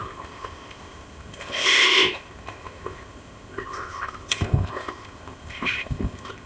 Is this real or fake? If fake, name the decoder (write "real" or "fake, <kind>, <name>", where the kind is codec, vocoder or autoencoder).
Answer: fake, codec, ZipCodec